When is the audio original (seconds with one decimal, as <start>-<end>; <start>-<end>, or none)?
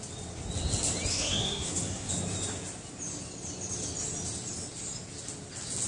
0.0-1.1; 2.1-5.9